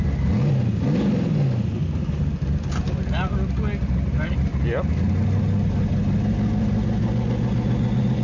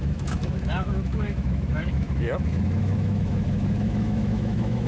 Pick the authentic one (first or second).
first